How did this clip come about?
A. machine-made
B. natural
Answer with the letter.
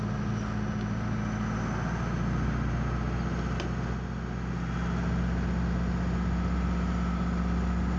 B